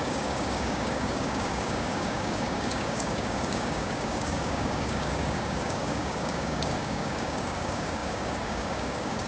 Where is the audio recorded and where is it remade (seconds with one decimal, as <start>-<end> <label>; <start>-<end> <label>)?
0.0-9.3 remade